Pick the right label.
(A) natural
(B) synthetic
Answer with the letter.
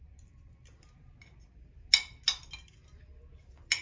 A